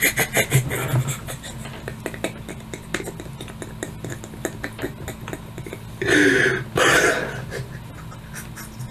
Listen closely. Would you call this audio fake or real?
real